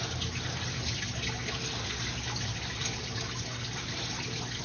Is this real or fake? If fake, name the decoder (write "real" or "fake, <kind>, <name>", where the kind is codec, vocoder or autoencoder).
real